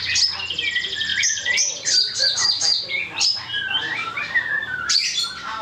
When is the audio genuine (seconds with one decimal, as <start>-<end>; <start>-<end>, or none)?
0.0-1.1; 4.1-4.6